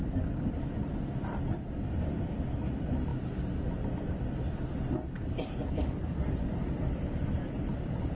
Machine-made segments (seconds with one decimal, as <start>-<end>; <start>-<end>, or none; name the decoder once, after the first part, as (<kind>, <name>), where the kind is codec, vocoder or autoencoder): none